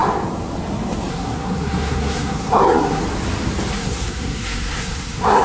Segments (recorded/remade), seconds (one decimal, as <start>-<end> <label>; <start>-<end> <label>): 0.0-1.1 recorded; 1.1-3.0 remade; 3.0-3.7 recorded; 3.7-5.4 remade